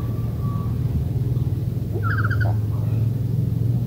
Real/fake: real